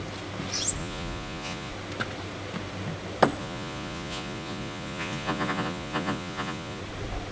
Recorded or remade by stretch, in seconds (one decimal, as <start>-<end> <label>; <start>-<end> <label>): 0.0-0.8 recorded; 0.8-1.7 remade; 1.7-3.4 recorded; 3.4-6.8 remade; 6.8-7.3 recorded